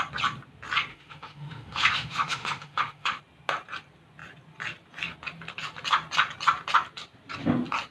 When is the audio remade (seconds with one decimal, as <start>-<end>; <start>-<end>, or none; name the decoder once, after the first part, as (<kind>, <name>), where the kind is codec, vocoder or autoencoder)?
0.9-3.2 (autoencoder, DAC-VAE)